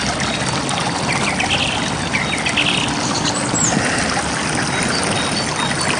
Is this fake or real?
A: real